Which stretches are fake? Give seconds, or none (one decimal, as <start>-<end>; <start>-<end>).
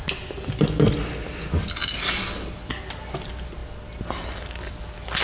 none